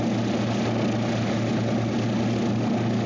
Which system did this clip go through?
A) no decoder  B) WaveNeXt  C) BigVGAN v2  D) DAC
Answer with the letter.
A